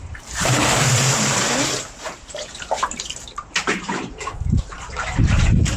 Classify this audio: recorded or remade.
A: remade